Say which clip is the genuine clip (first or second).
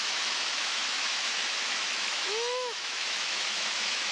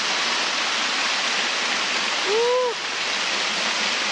second